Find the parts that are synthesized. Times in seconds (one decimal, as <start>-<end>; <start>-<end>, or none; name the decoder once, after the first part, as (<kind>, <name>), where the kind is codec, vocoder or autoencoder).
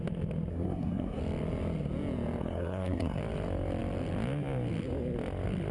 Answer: 0.5-1.2 (codec, SNAC); 2.4-3.2